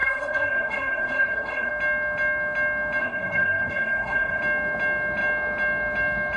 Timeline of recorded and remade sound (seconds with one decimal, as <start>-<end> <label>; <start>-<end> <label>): 0.0-1.7 remade; 1.7-3.0 recorded; 3.0-4.4 remade; 4.4-6.4 recorded